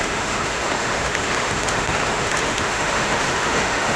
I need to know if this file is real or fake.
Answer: fake